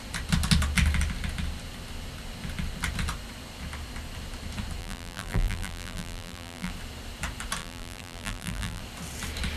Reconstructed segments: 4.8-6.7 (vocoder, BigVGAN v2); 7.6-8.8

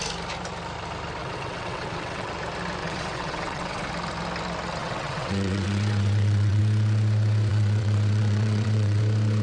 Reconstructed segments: 1.2-2.3 (vocoder, WaveNeXt); 2.8-3.9; 4.8-6.6; 7.5-9.0

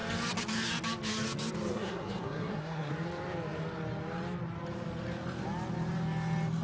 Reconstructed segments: 1.7-2.9 (codec, SNAC)

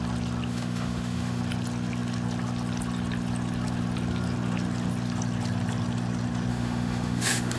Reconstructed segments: 0.5-1.4 (autoencoder, DAC-VAE); 6.5-7.6

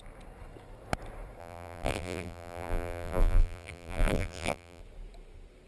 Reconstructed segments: 1.4-4.8 (vocoder, BigVGAN v2)

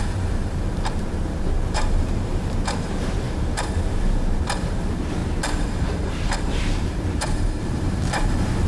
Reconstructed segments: 0.0-5.2 (vocoder, BigVGAN v2); 6.1-8.7

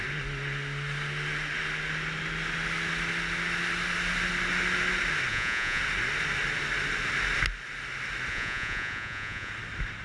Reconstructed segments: 5.3-5.8 (vocoder, Vocos); 8.3-9.5

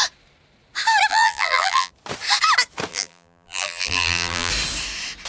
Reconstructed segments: 1.1-1.9 (vocoder, BigVGAN v2); 2.9-4.5